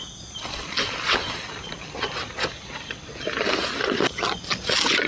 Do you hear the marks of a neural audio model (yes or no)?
no